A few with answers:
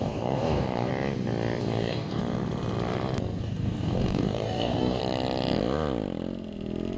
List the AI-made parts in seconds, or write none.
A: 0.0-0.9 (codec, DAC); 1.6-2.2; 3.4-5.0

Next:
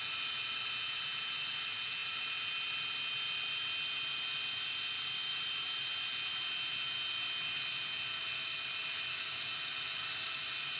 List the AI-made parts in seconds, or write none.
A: none

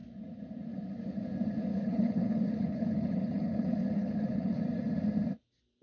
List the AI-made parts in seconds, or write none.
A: 1.7-4.6 (codec, HILCodec)

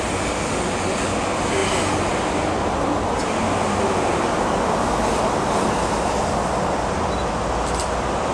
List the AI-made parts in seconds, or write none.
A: none

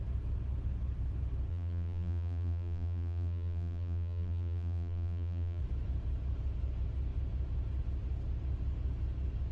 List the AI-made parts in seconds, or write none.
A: 1.5-5.6 (vocoder, BigVGAN v2)